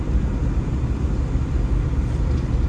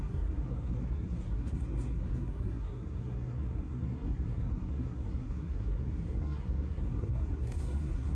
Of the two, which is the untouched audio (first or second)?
first